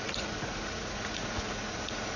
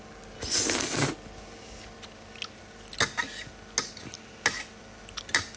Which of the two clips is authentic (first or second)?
second